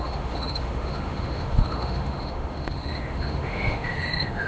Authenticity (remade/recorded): remade